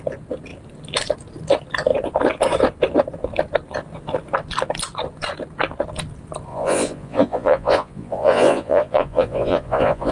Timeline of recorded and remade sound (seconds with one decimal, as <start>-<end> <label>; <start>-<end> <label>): 0.0-6.5 recorded; 6.5-10.1 remade